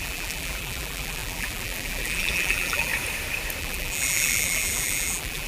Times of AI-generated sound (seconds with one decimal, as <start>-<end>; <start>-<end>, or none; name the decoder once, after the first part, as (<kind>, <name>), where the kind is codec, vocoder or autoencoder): 0.0-2.9 (vocoder, BigVGAN v2); 3.6-5.5